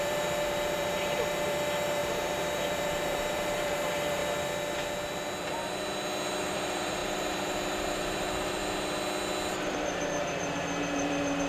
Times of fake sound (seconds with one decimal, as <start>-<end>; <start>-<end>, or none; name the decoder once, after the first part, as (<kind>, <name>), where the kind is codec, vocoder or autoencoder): 0.0-4.2 (vocoder, BigVGAN v2); 6.4-8.6; 9.5-11.5